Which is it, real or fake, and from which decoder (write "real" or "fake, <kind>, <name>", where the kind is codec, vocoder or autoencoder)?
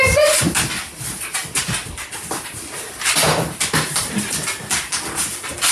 real